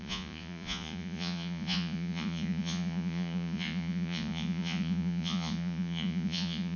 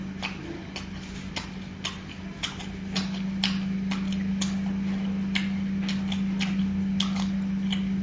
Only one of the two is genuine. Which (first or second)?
second